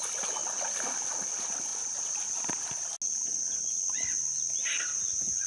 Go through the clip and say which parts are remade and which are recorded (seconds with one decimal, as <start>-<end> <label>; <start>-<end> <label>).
0.0-5.5 recorded